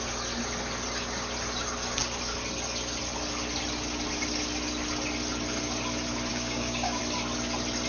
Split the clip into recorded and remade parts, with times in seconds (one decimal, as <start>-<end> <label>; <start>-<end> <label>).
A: 0.0-6.3 recorded; 6.3-7.0 remade; 7.0-7.9 recorded